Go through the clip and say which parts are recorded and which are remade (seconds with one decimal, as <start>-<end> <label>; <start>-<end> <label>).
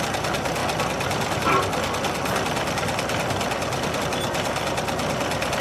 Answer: 0.0-5.6 recorded